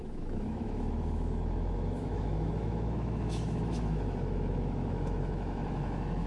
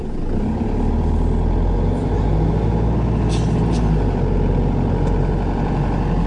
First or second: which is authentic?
second